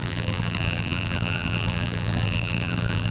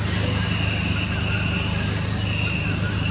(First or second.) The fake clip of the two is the first